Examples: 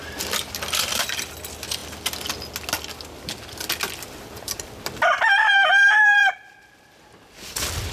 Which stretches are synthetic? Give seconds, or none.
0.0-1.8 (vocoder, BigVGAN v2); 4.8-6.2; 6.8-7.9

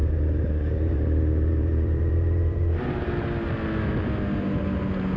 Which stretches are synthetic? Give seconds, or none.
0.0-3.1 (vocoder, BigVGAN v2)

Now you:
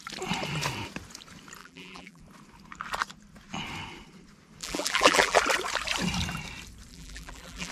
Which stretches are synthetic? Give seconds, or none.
1.6-2.2 (vocoder, BigVGAN v2); 4.6-5.4; 6.9-7.7

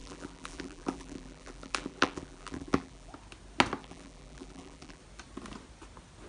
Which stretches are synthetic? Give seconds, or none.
0.0-3.1 (vocoder, BigVGAN v2); 3.8-5.0

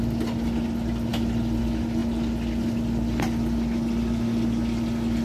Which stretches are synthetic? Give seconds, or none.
none

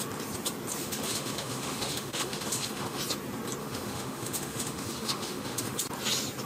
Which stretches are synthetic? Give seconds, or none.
0.8-3.0 (autoencoder, DAC-VAE); 3.6-5.8

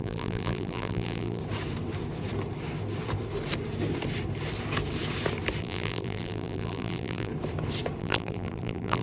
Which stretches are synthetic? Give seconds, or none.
0.0-1.4 (vocoder, BigVGAN v2); 5.6-7.3; 8.0-9.0